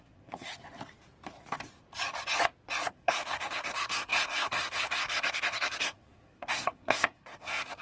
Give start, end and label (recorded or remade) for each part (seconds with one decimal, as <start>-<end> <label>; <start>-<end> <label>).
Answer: 0.0-0.5 remade; 0.5-2.9 recorded; 2.9-7.8 remade